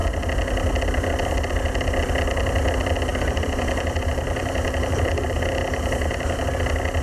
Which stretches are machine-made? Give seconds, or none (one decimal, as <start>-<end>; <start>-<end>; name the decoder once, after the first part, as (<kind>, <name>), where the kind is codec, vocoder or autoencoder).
3.1-6.4 (vocoder, BigVGAN v2)